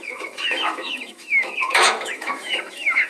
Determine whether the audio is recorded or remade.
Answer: remade